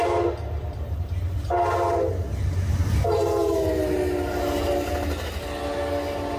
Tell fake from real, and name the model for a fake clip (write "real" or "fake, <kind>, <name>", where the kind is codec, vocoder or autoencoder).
real